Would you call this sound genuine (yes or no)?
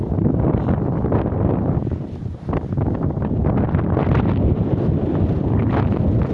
yes